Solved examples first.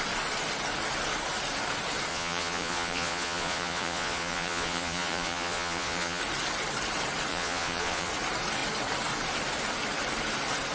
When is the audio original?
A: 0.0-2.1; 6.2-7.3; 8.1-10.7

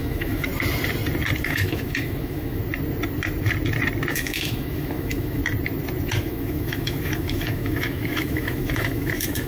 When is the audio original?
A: 0.5-1.4; 2.6-4.1; 5.4-6.2

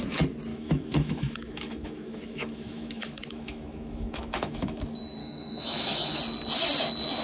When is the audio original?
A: 0.0-0.5; 4.8-5.2; 6.2-7.2

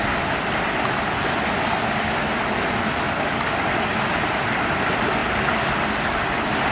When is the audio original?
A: 0.0-6.7